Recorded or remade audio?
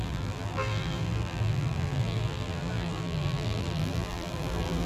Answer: remade